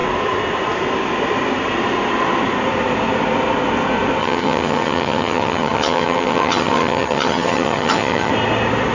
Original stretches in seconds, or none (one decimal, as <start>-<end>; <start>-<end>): 0.0-4.2; 8.3-8.9